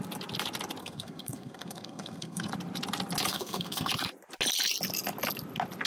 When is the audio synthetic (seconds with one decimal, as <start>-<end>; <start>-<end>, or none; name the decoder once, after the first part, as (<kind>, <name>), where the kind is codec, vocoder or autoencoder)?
0.8-2.5 (codec, SNAC); 3.3-3.9